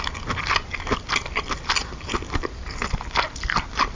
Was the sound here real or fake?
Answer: real